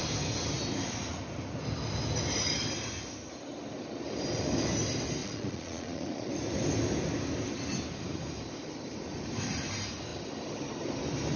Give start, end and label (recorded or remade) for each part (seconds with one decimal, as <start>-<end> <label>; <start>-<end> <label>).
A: 0.0-5.2 recorded; 5.2-6.3 remade; 6.3-11.4 recorded